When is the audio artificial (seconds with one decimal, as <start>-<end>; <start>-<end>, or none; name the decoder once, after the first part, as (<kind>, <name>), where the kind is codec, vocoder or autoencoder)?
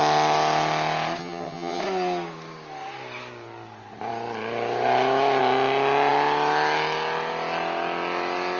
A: 1.2-1.8 (vocoder, HiFi-GAN)